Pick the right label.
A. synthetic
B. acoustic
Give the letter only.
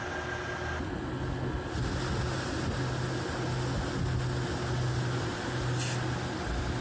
B